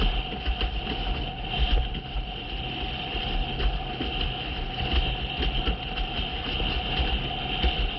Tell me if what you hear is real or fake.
real